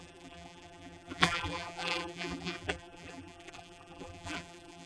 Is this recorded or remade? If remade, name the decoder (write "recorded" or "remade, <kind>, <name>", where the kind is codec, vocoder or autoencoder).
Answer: remade, vocoder, BigVGAN v2